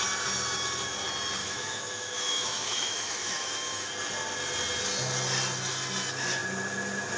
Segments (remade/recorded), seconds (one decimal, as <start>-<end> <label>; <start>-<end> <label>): 0.0-1.4 recorded; 1.4-3.9 remade; 3.9-7.2 recorded